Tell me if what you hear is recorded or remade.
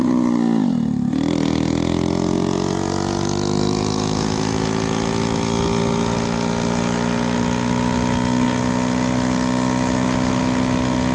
recorded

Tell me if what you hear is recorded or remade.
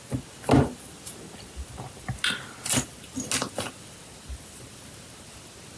recorded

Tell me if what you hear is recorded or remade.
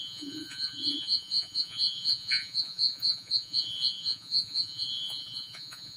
remade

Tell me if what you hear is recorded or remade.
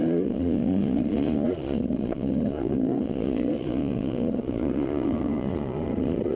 remade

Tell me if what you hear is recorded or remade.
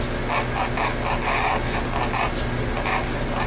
recorded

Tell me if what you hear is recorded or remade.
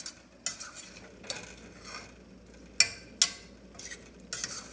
recorded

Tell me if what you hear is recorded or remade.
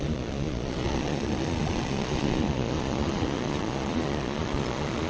remade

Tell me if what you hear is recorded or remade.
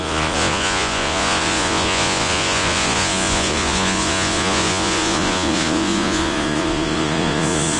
remade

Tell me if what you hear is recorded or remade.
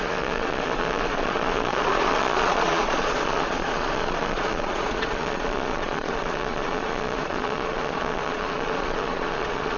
remade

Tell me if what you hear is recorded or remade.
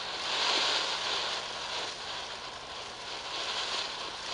recorded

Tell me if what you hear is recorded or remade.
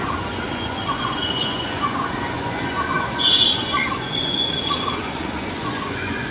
remade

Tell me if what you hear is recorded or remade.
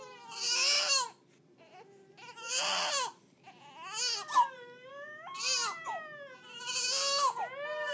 recorded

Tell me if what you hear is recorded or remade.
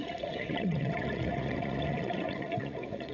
remade